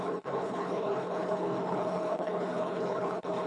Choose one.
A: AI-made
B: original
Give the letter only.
A